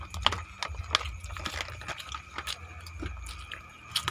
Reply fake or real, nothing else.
real